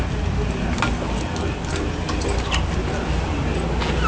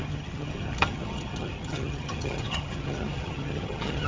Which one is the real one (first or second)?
first